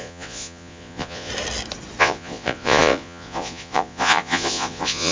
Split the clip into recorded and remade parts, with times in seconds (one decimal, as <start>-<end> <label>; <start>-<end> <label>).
0.0-1.3 remade; 1.3-2.0 recorded; 2.0-5.1 remade